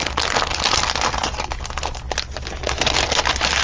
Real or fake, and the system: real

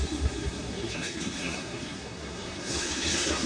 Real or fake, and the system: fake, codec, SNAC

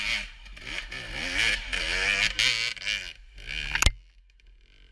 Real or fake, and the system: real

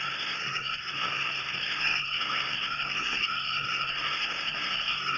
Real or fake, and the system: fake, codec, SNAC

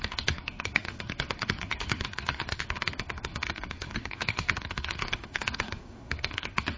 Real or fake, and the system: fake, codec, SNAC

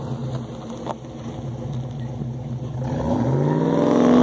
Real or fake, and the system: real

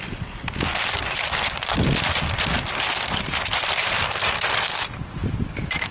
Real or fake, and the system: real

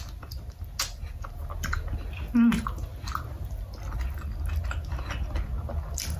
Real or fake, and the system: real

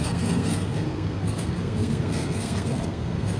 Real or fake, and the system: fake, codec, SNAC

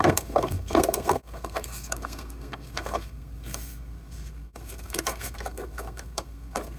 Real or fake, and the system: fake, codec, SNAC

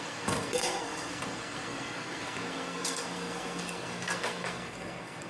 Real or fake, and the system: fake, codec, SNAC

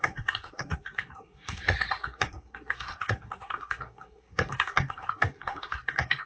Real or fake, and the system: fake, codec, SNAC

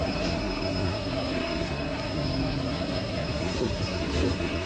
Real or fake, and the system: fake, codec, SNAC